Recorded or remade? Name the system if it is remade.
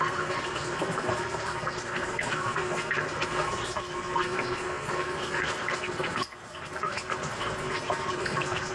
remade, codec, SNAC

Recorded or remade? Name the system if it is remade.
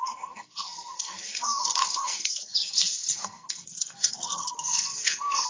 remade, codec, SNAC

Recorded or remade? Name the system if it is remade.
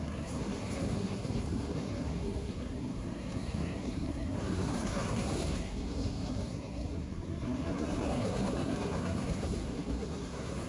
remade, codec, SNAC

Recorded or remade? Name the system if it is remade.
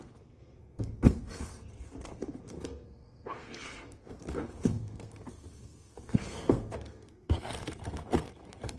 remade, codec, SNAC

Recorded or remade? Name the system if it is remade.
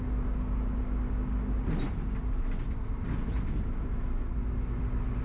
recorded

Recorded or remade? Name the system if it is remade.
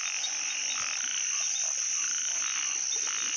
recorded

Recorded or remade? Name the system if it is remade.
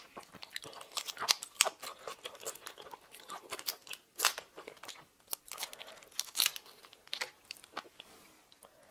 recorded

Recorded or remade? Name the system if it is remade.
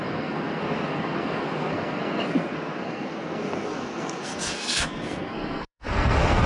remade, codec, SNAC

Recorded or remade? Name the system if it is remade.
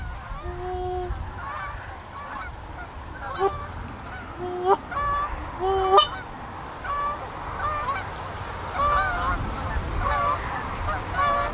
recorded